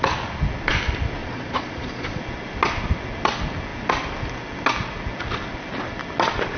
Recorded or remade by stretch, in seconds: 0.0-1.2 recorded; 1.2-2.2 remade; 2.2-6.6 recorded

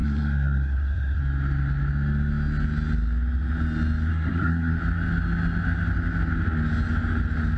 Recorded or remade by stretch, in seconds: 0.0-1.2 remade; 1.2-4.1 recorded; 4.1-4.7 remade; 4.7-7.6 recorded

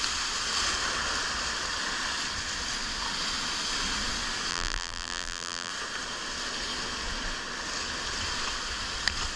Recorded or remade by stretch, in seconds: 0.0-4.5 recorded; 4.5-5.7 remade; 5.7-9.4 recorded

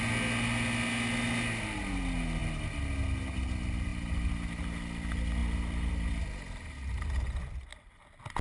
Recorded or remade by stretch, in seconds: 0.0-8.4 recorded